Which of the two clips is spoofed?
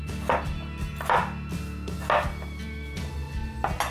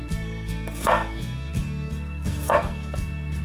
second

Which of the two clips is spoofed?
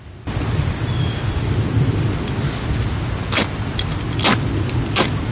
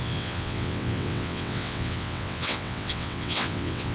second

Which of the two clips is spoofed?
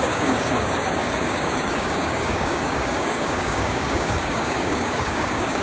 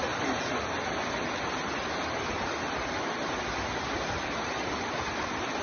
first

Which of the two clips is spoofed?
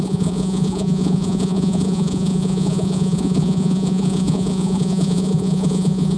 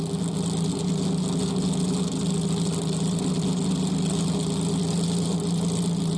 first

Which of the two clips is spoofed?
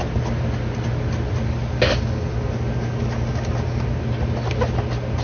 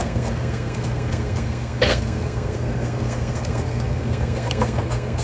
second